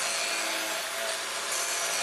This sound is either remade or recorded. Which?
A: recorded